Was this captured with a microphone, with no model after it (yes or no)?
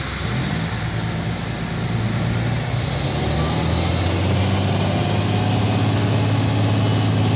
yes